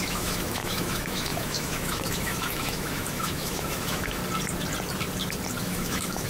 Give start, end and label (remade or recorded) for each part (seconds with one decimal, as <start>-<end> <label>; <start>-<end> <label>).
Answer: 0.0-4.2 remade; 4.2-5.6 recorded; 5.6-6.3 remade